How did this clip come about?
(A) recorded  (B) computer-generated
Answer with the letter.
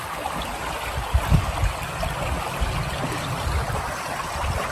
A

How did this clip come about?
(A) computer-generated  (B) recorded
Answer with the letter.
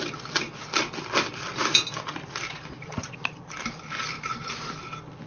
B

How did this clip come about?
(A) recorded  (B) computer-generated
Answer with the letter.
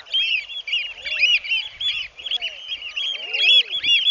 A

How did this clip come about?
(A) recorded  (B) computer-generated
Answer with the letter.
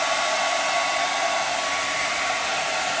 A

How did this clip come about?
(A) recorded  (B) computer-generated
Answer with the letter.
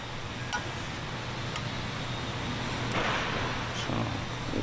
A